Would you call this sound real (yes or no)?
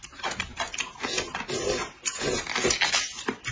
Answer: yes